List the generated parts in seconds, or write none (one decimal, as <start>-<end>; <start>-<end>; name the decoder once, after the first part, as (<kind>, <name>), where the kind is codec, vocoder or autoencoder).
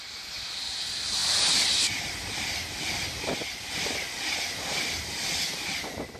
none